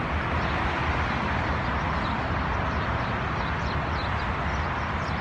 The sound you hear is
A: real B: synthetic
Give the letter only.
A